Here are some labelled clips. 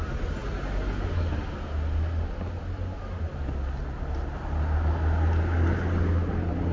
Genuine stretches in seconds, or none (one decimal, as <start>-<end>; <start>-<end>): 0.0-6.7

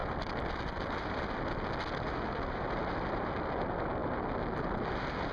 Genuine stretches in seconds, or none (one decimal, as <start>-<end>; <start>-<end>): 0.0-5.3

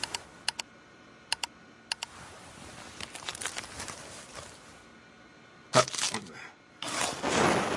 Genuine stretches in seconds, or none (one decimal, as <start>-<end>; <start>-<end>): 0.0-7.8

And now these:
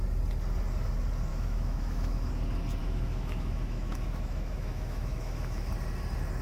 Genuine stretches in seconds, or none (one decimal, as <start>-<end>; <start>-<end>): 0.0-1.3; 2.3-2.8; 5.7-6.4

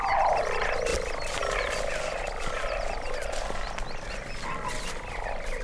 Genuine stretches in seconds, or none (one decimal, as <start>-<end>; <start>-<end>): 0.0-5.6

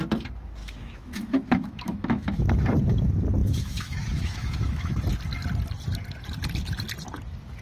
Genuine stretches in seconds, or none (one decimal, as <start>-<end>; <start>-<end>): 0.0-0.6; 2.5-3.4; 5.0-7.6